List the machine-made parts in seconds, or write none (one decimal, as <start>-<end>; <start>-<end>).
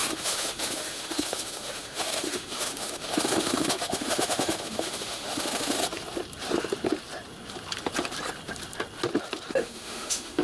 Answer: 0.0-5.8; 9.5-10.4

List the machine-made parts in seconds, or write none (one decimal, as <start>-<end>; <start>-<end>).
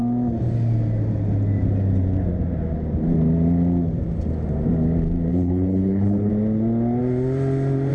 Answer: 5.3-6.3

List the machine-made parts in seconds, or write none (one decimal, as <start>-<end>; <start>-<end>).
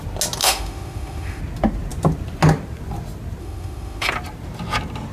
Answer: 0.4-1.4; 3.4-4.1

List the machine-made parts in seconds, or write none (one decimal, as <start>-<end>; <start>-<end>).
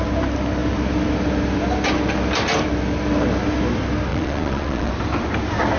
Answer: 4.1-4.9